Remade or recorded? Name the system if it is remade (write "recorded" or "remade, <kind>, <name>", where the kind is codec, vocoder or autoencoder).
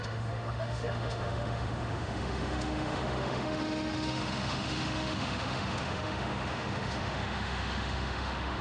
remade, autoencoder, DAC-VAE